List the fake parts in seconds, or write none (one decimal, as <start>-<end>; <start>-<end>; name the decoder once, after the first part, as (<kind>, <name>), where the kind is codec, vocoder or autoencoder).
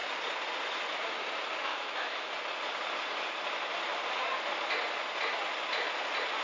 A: 1.7-2.3 (autoencoder, DAC-VAE)